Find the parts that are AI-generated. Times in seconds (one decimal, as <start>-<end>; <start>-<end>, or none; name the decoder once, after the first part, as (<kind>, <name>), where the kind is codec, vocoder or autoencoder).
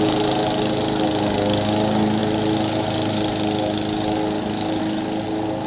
none